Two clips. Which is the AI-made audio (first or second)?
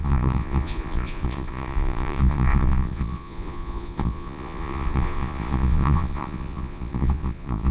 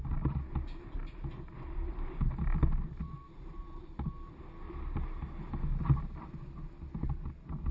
first